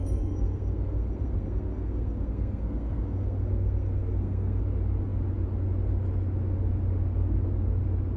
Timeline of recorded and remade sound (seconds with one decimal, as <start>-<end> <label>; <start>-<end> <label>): 0.0-4.6 remade; 4.6-8.2 recorded

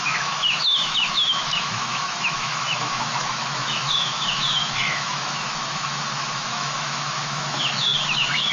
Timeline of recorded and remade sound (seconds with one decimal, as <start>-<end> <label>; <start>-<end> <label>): 0.0-8.5 remade

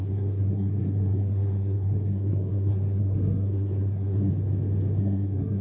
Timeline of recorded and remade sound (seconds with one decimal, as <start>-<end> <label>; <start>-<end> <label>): 0.0-4.3 remade; 4.3-5.0 recorded; 5.0-5.6 remade

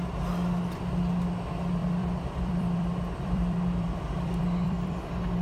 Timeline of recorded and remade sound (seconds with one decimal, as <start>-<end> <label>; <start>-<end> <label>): 0.0-1.8 recorded; 1.8-5.0 remade; 5.0-5.4 recorded

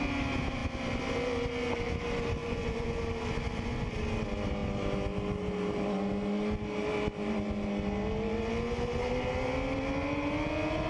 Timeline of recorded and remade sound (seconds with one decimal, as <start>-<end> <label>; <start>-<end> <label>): 0.0-2.4 recorded; 2.4-3.0 remade; 3.0-10.9 recorded